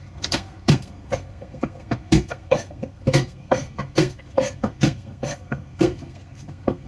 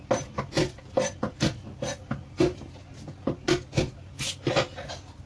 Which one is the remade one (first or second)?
first